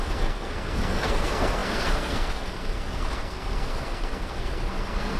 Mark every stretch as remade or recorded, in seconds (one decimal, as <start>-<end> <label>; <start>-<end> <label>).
0.0-5.2 remade